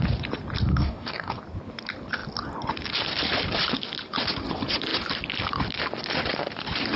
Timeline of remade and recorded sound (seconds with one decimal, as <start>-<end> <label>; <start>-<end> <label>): 0.0-0.7 recorded; 0.7-1.4 remade; 1.4-7.0 recorded